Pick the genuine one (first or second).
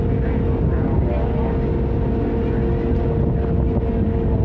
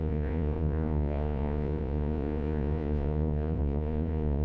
first